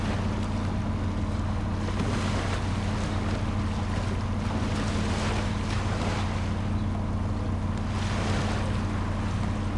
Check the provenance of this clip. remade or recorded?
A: recorded